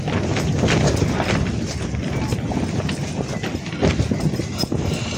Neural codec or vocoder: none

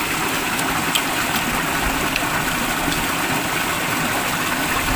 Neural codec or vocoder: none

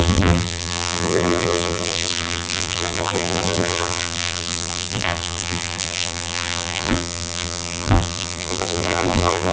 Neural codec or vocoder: vocoder, BigVGAN v2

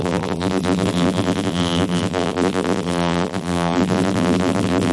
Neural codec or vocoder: vocoder, BigVGAN v2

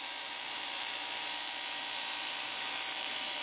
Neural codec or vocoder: vocoder, BigVGAN v2